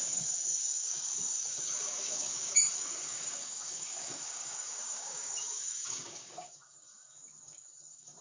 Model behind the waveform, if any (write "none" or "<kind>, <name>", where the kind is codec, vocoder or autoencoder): codec, DAC